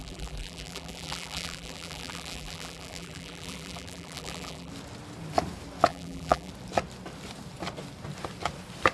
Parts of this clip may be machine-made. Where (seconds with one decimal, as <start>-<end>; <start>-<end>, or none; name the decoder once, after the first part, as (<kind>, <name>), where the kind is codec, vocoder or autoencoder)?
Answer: 0.0-4.7 (vocoder, BigVGAN v2); 5.9-6.5